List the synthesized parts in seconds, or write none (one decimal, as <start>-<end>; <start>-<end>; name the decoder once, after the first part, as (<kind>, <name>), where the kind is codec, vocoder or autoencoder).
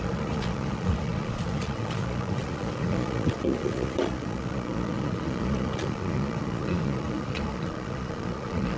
0.0-8.8 (vocoder, Vocos)